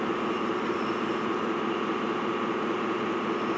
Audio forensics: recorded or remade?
recorded